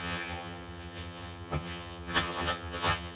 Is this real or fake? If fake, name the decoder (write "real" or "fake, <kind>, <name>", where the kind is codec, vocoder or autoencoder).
fake, vocoder, HiFi-GAN